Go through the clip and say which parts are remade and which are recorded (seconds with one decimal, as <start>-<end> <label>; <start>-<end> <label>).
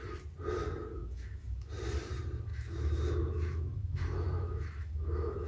0.0-1.0 recorded; 1.0-1.7 remade; 1.7-2.5 recorded; 2.5-5.5 remade